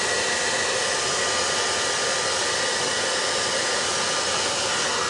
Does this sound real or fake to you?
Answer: real